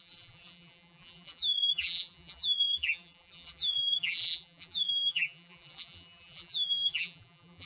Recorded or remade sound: remade